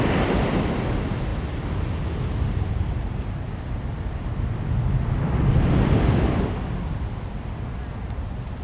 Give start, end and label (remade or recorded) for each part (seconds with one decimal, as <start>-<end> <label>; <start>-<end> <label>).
0.0-8.6 recorded